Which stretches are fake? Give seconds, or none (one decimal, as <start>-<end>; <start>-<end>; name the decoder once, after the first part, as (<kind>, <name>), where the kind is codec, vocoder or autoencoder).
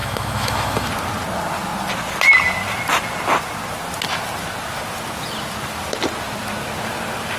0.0-0.9 (autoencoder, DAC-VAE)